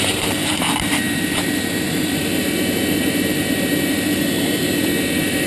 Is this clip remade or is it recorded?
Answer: remade